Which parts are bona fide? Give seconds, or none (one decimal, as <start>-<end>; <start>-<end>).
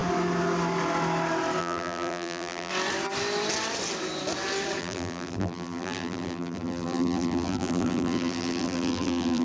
0.0-1.6; 2.7-4.8